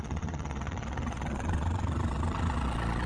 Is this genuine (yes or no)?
no